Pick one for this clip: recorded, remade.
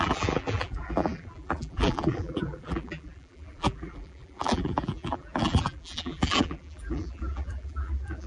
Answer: remade